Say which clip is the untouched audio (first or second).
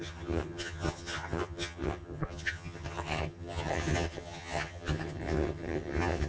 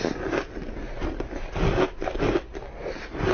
second